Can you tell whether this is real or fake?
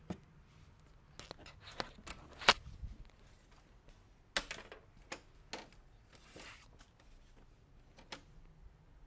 real